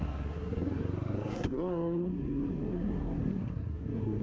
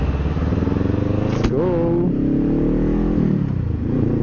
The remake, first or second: first